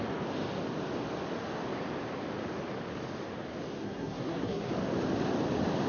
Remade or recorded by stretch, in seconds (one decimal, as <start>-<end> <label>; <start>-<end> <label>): 0.0-3.8 recorded; 3.8-4.7 remade; 4.7-5.9 recorded